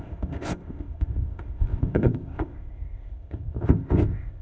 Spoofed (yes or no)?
yes